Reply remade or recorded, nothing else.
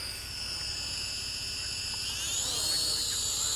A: recorded